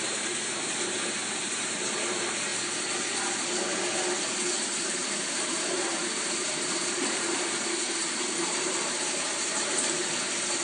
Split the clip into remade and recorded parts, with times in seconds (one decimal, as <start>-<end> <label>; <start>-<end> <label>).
0.0-2.5 remade; 2.5-4.5 recorded; 4.5-10.6 remade